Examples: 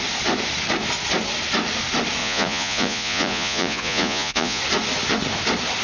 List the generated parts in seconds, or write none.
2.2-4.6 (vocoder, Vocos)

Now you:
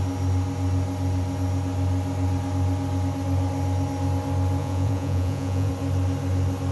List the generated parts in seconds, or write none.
4.6-5.7 (vocoder, Vocos)

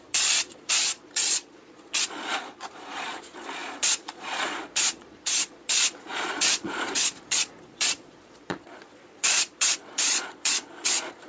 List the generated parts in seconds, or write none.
0.0-11.3 (vocoder, Vocos)

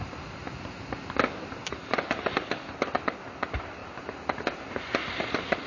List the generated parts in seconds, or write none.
none

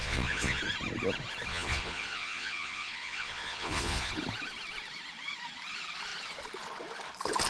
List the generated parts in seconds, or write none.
0.0-0.6 (vocoder, Vocos); 1.5-4.1

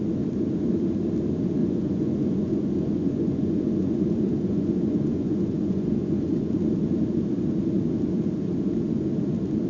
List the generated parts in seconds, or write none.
1.6-6.5 (vocoder, Vocos)

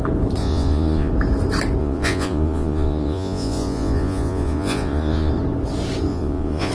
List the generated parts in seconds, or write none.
0.4-1.1 (vocoder, Vocos); 1.8-5.3; 6.1-6.7